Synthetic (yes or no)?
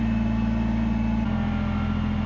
no